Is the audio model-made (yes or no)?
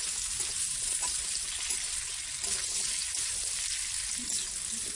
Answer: no